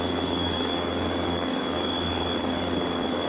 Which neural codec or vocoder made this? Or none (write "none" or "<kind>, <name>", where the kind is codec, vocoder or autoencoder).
codec, DAC